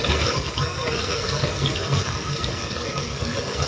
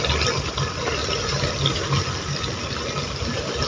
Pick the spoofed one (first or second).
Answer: first